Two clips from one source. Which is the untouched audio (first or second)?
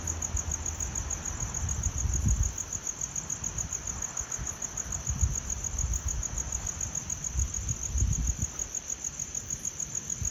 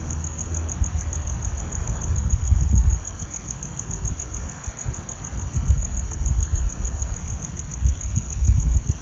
first